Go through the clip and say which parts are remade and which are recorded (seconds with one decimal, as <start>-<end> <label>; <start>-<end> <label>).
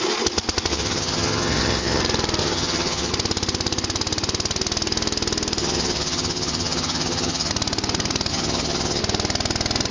0.0-0.7 recorded; 0.7-2.0 remade; 2.0-2.4 recorded; 2.4-3.1 remade; 3.1-5.6 recorded; 5.6-7.5 remade; 7.5-8.3 recorded; 8.3-9.0 remade; 9.0-9.9 recorded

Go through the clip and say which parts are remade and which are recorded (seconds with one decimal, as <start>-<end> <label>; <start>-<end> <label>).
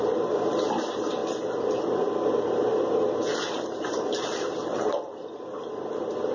0.0-1.2 remade; 1.2-2.0 recorded; 2.0-6.3 remade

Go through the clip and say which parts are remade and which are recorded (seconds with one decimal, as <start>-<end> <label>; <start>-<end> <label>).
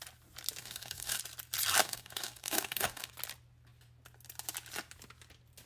0.0-0.6 recorded; 0.6-1.2 remade; 1.2-1.8 recorded; 1.8-3.1 remade; 3.1-5.7 recorded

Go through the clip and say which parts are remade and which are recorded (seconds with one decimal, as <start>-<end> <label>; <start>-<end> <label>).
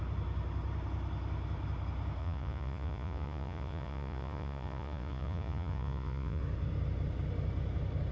0.0-2.2 recorded; 2.2-6.4 remade; 6.4-8.1 recorded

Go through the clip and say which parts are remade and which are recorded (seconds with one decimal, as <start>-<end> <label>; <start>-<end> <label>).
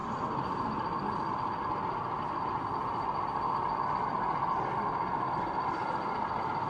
0.0-6.7 recorded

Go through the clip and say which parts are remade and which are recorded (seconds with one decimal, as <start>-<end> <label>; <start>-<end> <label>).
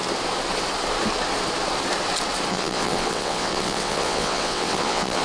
0.0-2.5 recorded; 2.5-5.2 remade